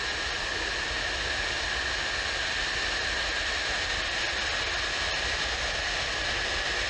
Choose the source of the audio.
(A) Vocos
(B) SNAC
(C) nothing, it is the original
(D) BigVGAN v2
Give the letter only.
C